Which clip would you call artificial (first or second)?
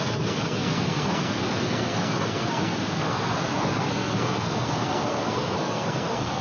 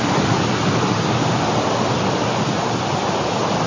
first